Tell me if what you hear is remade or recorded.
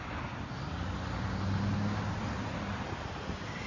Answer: recorded